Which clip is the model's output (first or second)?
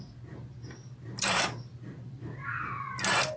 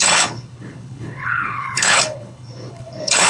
second